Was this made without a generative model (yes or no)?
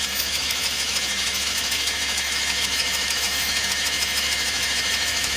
no